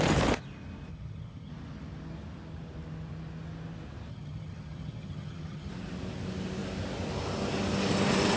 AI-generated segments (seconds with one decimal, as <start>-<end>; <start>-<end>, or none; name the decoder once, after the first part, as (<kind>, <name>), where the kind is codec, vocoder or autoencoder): 0.9-1.5 (vocoder, HiFi-GAN); 4.1-5.7